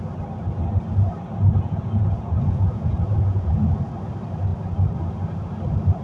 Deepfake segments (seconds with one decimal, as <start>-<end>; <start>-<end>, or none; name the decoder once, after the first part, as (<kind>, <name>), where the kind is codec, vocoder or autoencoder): 1.5-3.8 (vocoder, Vocos)